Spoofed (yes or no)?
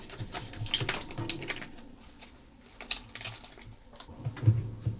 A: no